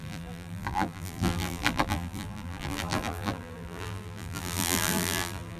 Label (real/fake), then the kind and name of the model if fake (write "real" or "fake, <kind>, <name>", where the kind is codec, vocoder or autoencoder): fake, vocoder, BigVGAN v2